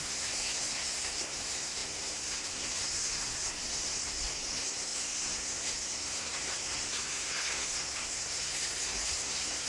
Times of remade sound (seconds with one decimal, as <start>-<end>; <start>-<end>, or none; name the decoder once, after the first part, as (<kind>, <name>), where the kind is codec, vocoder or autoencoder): 0.0-9.7 (codec, SNAC)